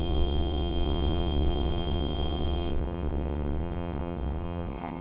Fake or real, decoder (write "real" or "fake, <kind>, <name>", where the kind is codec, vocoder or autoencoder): fake, vocoder, WaveNeXt